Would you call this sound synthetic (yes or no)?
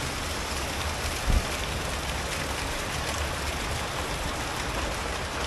no